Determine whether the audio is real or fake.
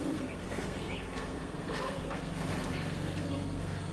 fake